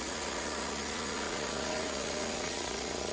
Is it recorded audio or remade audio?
remade